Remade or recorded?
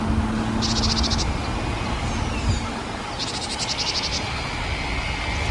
recorded